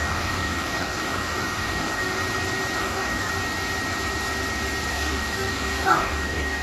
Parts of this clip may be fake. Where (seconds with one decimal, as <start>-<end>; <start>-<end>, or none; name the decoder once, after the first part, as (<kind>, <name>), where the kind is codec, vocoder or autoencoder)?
0.0-2.2 (codec, DAC); 2.8-3.3; 4.9-6.6